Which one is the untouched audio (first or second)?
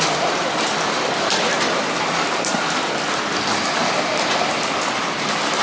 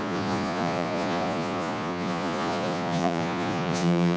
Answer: first